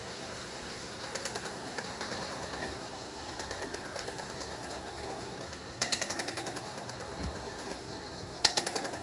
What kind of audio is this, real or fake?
fake